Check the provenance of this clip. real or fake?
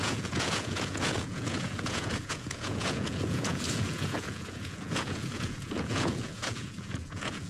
fake